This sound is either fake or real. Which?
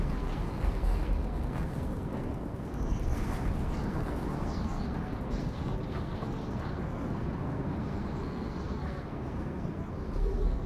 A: fake